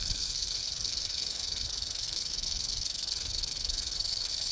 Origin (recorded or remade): remade